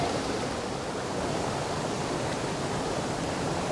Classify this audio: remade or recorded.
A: remade